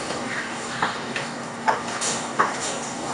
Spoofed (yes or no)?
yes